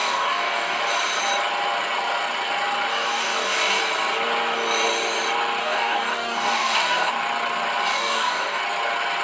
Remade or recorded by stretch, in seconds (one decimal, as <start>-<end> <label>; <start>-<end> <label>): 0.0-0.8 remade; 0.8-2.9 recorded; 2.9-3.8 remade; 3.8-5.6 recorded; 5.6-7.1 remade; 7.1-7.9 recorded; 7.9-8.6 remade; 8.6-9.2 recorded